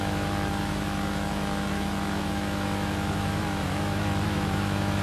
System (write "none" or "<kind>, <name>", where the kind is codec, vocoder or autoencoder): autoencoder, DAC-VAE